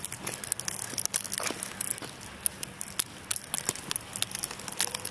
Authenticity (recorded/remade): recorded